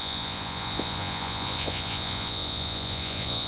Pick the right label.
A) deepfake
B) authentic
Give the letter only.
A